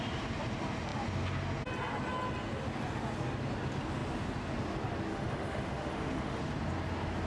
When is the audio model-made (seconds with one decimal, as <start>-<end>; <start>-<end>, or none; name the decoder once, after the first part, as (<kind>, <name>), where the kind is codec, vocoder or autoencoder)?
5.1-6.4 (autoencoder, DAC-VAE)